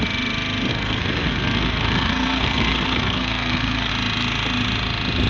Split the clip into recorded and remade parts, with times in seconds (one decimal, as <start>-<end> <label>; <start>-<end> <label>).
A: 0.0-0.7 recorded; 0.7-3.9 remade; 3.9-5.3 recorded